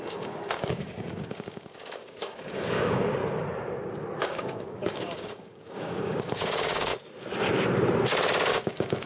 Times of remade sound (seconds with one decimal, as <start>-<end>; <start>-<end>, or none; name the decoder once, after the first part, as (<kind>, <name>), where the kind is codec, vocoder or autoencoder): 0.0-3.2 (codec, DAC); 4.2-6.9; 8.5-9.1